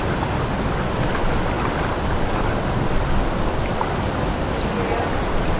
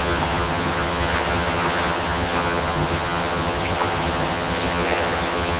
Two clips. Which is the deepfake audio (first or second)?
second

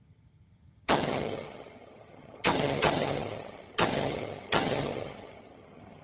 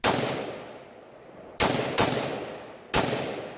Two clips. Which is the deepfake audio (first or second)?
first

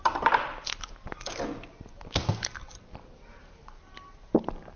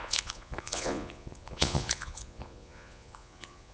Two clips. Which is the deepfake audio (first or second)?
second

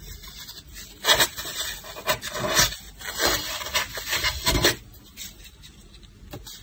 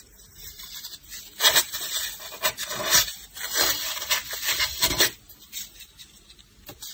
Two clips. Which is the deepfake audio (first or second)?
second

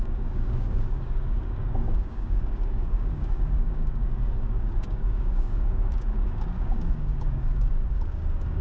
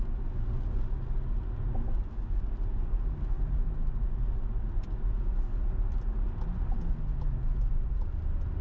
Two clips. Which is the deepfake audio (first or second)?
first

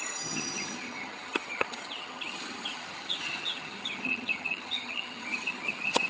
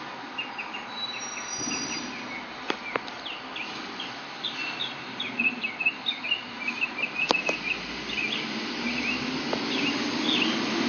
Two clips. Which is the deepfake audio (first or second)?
first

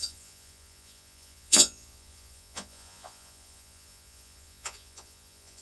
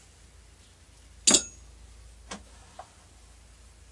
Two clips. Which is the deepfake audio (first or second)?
first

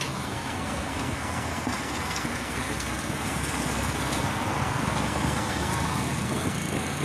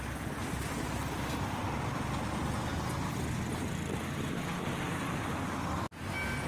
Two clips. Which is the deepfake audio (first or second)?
first